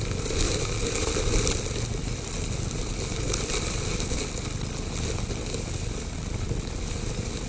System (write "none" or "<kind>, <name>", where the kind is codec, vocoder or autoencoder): none